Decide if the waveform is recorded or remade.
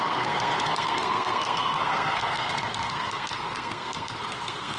remade